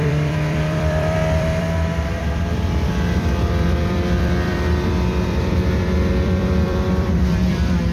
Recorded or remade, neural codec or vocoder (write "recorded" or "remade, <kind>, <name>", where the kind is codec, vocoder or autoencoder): remade, vocoder, BigVGAN v2